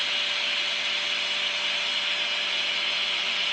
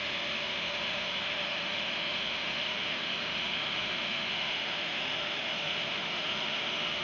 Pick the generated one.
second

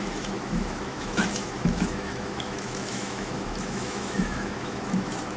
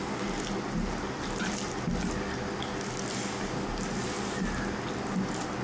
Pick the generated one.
first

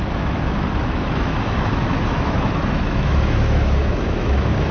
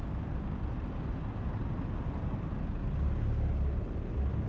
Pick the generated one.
first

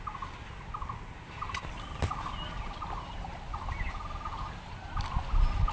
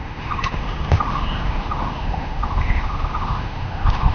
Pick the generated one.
second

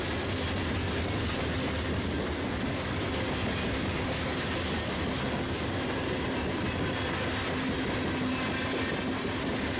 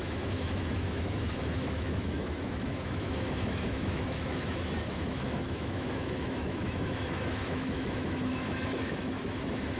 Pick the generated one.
second